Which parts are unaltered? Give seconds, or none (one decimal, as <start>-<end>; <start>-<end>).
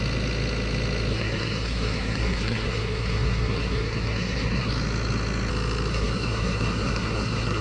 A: 0.0-1.1; 4.7-5.9